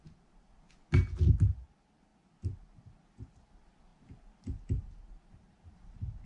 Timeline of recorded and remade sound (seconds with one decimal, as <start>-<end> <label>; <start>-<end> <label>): 0.0-6.3 recorded

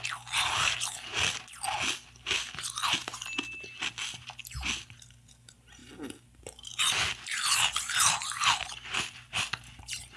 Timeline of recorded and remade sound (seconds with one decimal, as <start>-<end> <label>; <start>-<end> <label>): 0.0-10.2 recorded

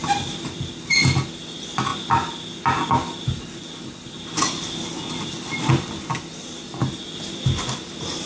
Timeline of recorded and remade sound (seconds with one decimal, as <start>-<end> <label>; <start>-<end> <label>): 0.0-8.3 recorded